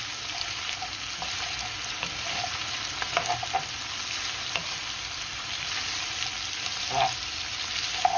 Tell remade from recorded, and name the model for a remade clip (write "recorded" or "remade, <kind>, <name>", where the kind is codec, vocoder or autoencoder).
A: recorded